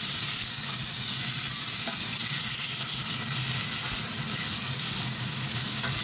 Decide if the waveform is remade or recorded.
recorded